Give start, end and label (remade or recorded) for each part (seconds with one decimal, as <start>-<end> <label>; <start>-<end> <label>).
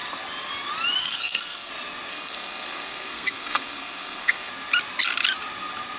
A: 0.0-1.0 recorded; 1.0-1.7 remade; 1.7-2.1 recorded; 2.1-4.5 remade; 4.5-6.0 recorded